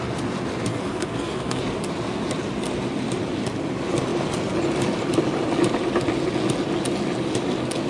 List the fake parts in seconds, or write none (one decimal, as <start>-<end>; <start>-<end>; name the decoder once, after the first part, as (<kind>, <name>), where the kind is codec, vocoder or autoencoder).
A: 0.7-1.6 (codec, SNAC)